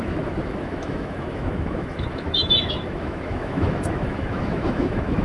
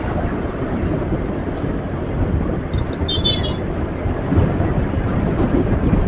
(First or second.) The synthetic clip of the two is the first